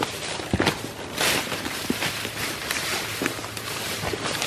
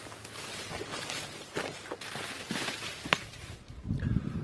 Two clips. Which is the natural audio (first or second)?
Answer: second